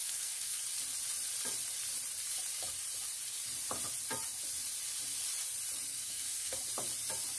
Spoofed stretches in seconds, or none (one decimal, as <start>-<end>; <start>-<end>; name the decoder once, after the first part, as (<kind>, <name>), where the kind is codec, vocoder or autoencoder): 0.0-0.6 (codec, SNAC); 5.9-6.6